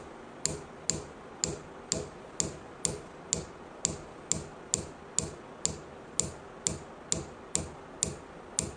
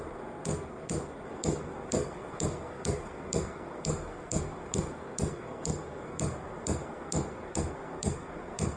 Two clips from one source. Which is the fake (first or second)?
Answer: second